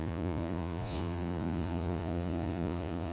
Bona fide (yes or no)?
no